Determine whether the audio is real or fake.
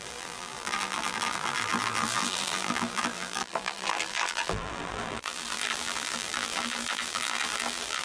fake